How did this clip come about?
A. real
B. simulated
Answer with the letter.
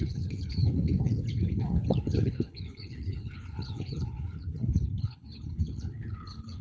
B